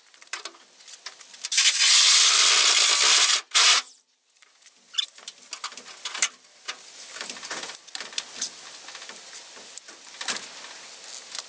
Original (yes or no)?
yes